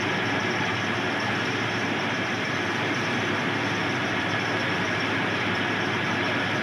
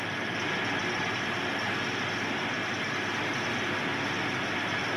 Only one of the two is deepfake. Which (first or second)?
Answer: first